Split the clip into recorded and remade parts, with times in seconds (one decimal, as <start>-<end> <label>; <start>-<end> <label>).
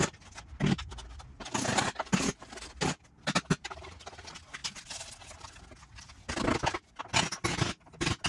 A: 0.0-8.3 recorded